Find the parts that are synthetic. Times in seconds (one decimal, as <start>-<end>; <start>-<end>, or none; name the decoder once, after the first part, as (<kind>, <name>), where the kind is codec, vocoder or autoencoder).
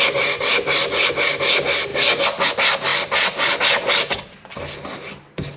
2.9-3.6 (vocoder, BigVGAN v2)